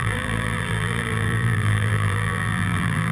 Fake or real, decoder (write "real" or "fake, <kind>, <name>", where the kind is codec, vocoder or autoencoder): fake, vocoder, BigVGAN v2